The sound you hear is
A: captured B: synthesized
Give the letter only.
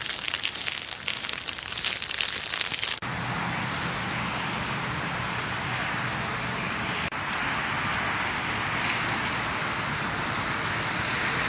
A